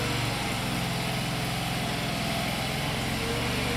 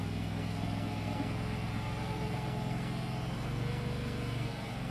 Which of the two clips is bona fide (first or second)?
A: first